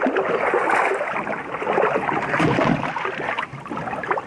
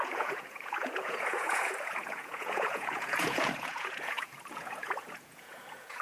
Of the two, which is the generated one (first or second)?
second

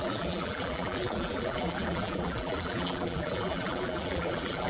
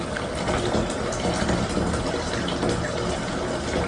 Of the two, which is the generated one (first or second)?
first